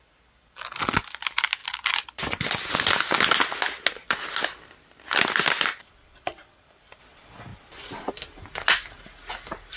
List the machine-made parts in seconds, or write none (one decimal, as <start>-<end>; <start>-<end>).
1.6-2.3; 5.7-7.0; 7.5-8.1